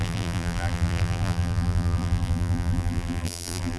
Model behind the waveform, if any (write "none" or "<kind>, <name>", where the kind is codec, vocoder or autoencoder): vocoder, BigVGAN v2